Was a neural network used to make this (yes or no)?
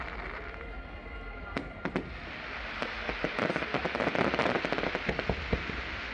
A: no